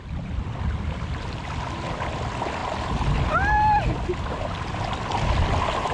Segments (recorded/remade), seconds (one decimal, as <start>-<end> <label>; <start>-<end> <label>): 0.0-5.9 recorded